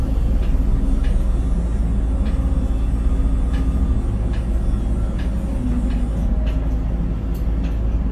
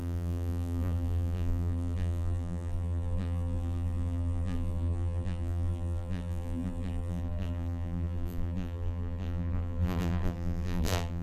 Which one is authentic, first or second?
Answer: first